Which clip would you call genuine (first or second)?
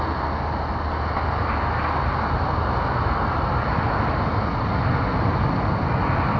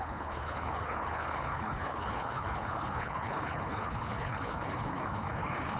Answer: first